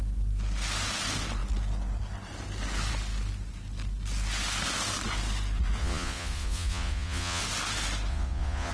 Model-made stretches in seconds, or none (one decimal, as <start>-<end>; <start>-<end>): 5.8-7.4; 8.1-8.7